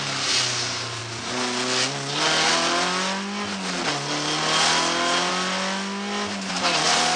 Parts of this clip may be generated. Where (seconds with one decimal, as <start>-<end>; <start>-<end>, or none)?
none

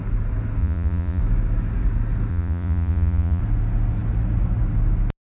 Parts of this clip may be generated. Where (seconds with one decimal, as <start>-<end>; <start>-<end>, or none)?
0.6-1.2; 2.3-3.4